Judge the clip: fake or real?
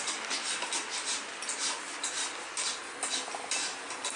real